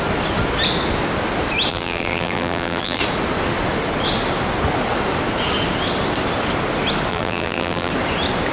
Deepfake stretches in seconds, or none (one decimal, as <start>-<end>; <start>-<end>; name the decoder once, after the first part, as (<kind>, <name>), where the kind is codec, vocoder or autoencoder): 1.7-3.0 (vocoder, BigVGAN v2); 7.1-7.9